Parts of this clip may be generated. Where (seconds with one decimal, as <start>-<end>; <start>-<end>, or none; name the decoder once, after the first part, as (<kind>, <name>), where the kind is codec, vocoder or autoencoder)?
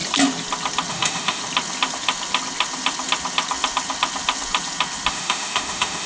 0.9-1.4 (autoencoder, DAC-VAE); 5.1-6.1